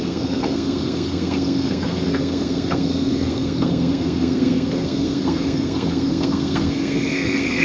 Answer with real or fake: fake